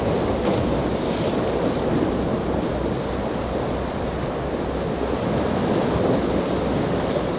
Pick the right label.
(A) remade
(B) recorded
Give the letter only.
B